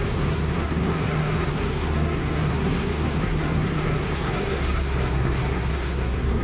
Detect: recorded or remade remade